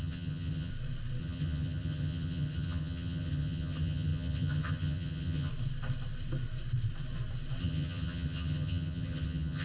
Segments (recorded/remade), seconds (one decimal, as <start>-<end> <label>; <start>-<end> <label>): 0.0-0.7 remade; 0.7-1.2 recorded; 1.2-5.5 remade; 5.5-7.6 recorded; 7.6-9.6 remade